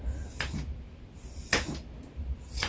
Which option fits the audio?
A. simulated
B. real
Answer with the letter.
B